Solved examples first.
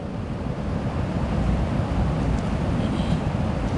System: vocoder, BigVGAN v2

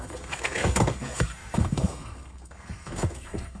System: codec, SNAC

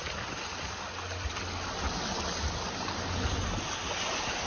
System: none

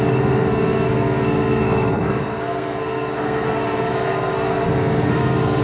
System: codec, SNAC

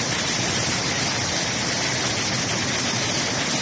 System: none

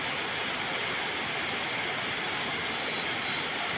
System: none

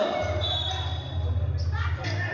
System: none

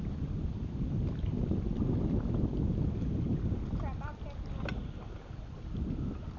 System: none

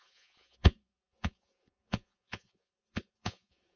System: vocoder, Vocos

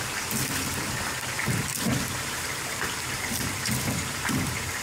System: vocoder, BigVGAN v2